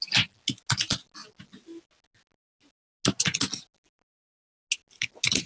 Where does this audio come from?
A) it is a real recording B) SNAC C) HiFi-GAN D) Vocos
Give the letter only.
A